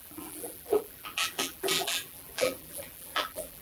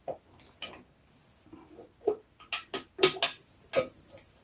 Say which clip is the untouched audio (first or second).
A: second